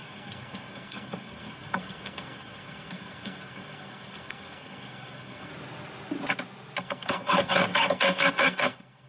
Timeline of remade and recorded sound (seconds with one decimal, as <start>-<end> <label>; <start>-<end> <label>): 0.0-5.5 remade; 5.5-6.8 recorded; 6.8-9.1 remade